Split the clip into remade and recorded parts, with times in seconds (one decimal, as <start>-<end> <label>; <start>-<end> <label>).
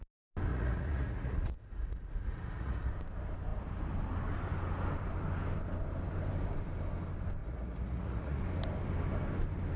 0.0-0.5 recorded; 0.5-2.9 remade; 2.9-7.4 recorded; 7.4-8.4 remade; 8.4-9.8 recorded